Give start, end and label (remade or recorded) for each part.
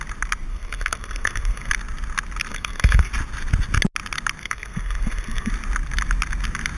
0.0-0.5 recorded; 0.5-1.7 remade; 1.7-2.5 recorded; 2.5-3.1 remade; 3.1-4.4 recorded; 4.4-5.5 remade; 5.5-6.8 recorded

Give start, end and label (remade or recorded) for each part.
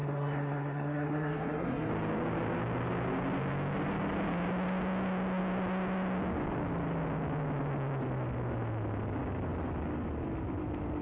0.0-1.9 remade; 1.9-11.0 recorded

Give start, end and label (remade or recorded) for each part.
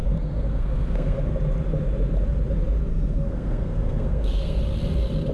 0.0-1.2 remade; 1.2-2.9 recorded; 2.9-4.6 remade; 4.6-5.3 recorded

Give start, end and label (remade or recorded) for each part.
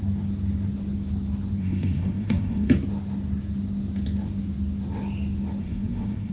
0.0-1.6 recorded; 1.6-2.7 remade; 2.7-5.6 recorded; 5.6-6.3 remade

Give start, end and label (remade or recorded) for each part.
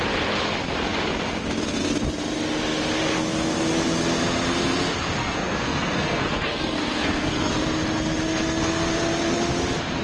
0.0-5.2 recorded; 5.2-7.5 remade; 7.5-10.0 recorded